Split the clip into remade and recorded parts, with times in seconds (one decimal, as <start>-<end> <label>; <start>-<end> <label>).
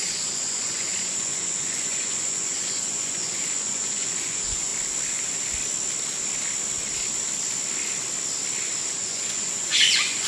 0.0-4.7 remade; 4.7-8.9 recorded; 8.9-10.3 remade